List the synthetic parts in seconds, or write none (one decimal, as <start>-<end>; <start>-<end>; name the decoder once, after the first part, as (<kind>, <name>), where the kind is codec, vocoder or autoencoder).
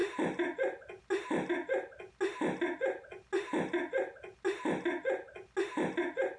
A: none